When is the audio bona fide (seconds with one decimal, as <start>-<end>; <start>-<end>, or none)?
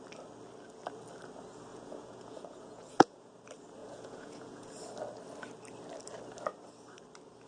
0.0-1.7; 3.3-3.8; 4.7-7.5